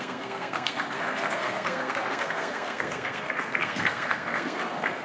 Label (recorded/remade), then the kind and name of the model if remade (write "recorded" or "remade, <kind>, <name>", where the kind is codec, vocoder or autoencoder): remade, codec, SNAC